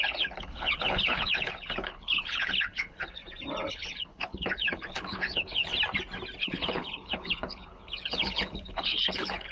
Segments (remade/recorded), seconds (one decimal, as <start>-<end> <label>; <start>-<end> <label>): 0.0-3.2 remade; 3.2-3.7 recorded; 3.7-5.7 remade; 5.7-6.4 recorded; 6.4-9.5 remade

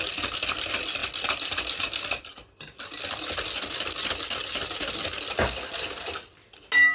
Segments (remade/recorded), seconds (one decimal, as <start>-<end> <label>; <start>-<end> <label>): 0.0-2.4 recorded; 2.4-4.9 remade; 4.9-6.9 recorded

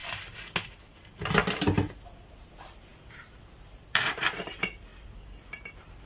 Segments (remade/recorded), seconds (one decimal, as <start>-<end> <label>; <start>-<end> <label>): 0.0-2.4 recorded; 2.4-4.9 remade; 4.9-6.1 recorded